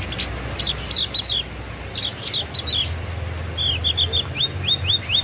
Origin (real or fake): real